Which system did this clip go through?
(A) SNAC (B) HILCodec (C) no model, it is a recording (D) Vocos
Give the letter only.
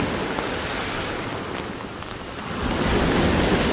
C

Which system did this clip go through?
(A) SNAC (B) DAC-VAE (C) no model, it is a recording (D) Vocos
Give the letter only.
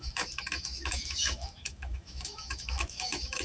B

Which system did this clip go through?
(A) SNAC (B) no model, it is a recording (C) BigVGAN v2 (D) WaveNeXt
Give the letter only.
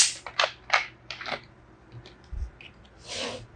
B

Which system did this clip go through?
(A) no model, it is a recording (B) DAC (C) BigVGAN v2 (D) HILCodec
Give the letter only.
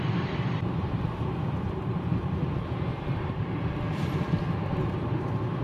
C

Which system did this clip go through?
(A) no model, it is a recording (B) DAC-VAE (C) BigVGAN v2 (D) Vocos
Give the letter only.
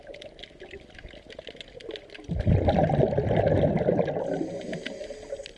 A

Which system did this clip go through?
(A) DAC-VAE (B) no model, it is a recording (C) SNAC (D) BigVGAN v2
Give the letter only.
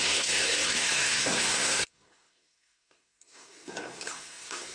C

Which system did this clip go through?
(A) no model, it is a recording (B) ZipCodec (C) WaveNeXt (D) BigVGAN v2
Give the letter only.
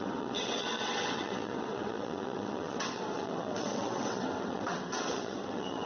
C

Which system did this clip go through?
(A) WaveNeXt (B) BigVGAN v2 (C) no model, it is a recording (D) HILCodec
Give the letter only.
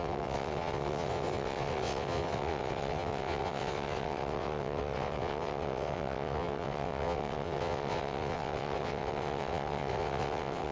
A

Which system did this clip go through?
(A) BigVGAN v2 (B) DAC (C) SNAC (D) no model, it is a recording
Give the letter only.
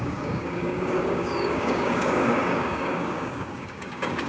B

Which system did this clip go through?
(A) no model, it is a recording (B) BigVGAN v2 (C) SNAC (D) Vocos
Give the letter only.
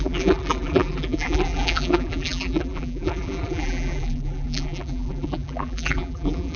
B